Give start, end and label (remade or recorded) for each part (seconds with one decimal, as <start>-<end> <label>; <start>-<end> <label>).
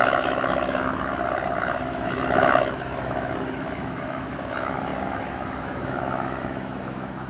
0.0-1.1 remade; 1.1-1.6 recorded; 1.6-7.3 remade